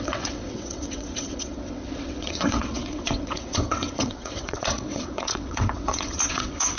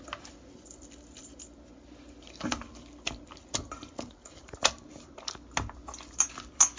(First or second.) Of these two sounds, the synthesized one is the first